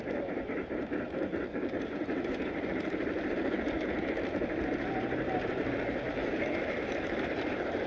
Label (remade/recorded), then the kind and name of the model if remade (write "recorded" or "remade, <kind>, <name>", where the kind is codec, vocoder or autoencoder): remade, vocoder, BigVGAN v2